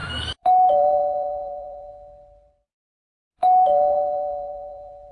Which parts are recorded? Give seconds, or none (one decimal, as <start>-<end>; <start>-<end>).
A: 1.9-3.4